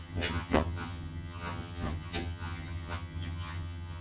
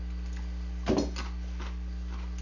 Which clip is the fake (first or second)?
first